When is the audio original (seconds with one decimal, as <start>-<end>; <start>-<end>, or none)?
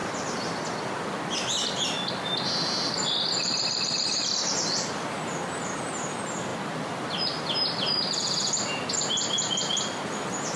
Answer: 2.1-6.5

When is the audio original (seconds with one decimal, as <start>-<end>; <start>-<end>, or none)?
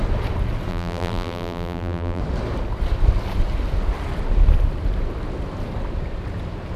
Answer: 0.0-0.7; 2.2-6.8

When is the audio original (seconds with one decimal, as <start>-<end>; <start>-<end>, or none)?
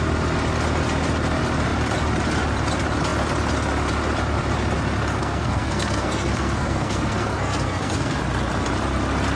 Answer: 0.0-5.2; 8.2-9.4